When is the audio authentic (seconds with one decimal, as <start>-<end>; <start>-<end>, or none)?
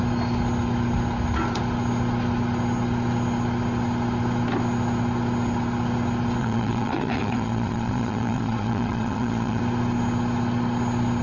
0.0-6.4; 9.6-11.2